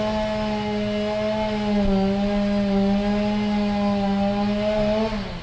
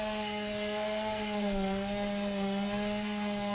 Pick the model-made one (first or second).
second